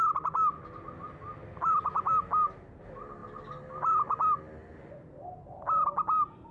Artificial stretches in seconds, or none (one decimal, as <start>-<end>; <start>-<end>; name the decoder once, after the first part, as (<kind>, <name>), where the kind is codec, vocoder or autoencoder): 1.4-2.8 (vocoder, BigVGAN v2)

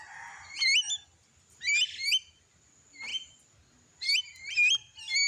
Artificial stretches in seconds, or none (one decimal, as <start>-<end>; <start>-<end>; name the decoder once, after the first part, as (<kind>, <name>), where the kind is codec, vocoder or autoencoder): none

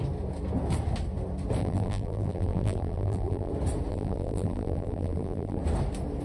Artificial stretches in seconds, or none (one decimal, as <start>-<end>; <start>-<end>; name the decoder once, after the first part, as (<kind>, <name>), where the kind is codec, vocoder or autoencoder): 1.6-3.5 (vocoder, BigVGAN v2); 3.9-5.6

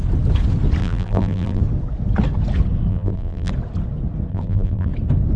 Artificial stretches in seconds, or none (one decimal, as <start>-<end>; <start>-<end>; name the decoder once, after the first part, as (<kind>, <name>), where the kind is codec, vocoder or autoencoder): 0.8-1.6 (vocoder, BigVGAN v2); 2.9-3.5; 4.3-4.9

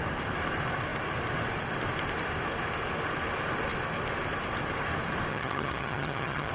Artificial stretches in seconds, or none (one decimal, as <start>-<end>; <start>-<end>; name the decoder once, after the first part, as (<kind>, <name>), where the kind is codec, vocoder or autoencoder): 5.3-6.5 (vocoder, HiFi-GAN)

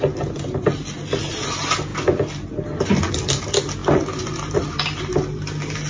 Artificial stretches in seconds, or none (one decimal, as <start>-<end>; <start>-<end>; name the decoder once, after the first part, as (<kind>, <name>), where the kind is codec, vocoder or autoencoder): none

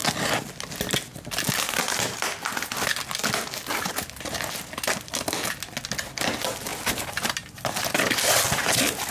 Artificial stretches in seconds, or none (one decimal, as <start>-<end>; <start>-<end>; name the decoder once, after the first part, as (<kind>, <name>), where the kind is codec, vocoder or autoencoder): none

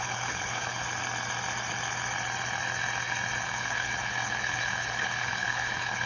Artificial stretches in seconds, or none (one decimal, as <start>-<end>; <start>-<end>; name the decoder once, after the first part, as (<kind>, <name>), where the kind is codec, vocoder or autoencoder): 0.0-0.8 (codec, HILCodec); 3.4-6.1